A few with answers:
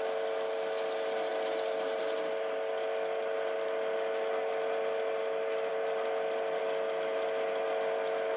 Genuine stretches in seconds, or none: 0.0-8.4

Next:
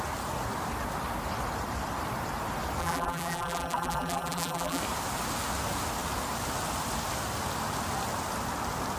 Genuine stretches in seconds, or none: 0.0-2.8; 4.8-9.0

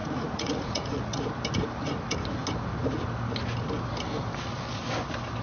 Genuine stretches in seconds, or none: 1.2-5.4

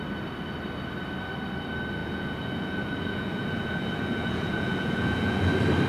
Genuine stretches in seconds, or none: 0.0-2.0; 5.5-5.9

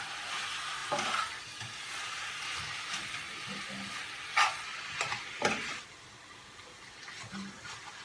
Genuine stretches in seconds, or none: 0.0-8.0